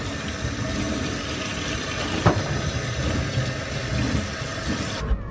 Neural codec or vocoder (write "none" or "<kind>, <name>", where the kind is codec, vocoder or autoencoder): none